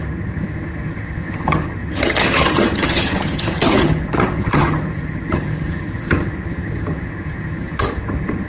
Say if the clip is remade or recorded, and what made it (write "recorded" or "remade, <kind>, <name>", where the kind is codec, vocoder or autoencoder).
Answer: remade, vocoder, HiFi-GAN